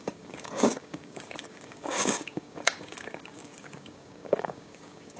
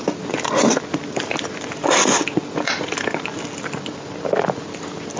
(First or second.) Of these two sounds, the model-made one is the first